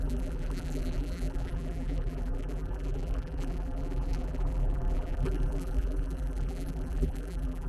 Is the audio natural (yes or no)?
no